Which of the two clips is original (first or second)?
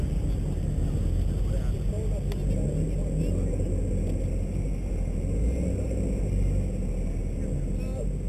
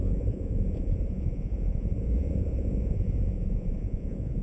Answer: first